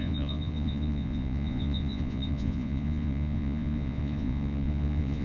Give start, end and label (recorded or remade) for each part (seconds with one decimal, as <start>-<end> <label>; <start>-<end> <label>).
0.0-5.2 remade